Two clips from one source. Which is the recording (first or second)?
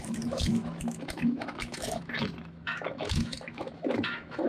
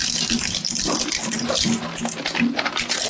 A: second